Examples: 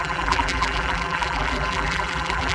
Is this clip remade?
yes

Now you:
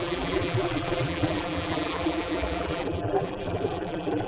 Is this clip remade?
yes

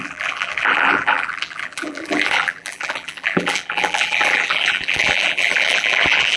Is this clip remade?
yes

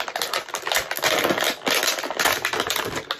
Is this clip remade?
no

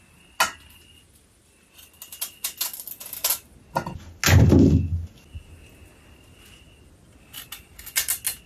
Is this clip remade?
no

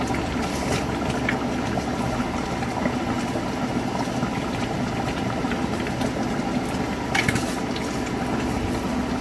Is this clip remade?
no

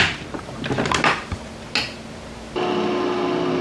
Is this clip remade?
no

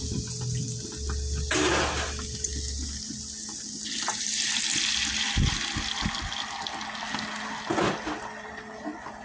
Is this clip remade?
no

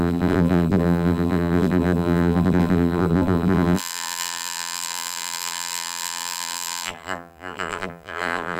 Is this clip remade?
yes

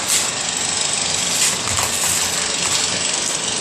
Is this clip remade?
no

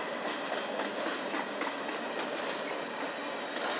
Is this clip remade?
no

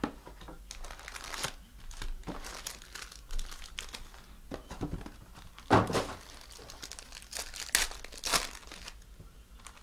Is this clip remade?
no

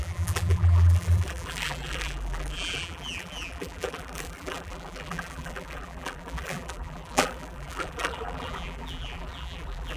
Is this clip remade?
yes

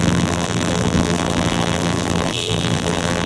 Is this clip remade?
yes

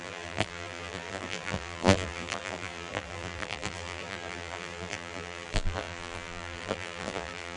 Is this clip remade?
yes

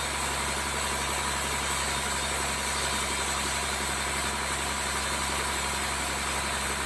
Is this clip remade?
no